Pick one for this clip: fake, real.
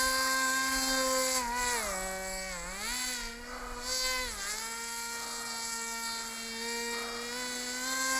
real